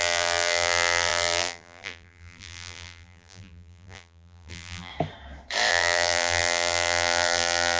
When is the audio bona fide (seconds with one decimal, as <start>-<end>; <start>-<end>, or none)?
4.9-5.7